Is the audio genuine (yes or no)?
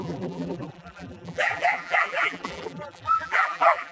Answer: no